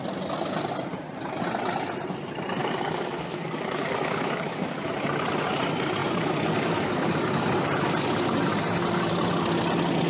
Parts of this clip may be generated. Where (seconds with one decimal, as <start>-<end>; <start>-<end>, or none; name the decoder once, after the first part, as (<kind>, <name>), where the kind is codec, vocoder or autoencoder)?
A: 2.6-4.9 (codec, DAC)